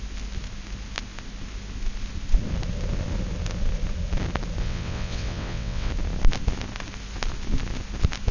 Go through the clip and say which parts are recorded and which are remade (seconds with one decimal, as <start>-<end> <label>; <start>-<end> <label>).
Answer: 0.0-4.6 recorded; 4.6-5.9 remade; 5.9-8.3 recorded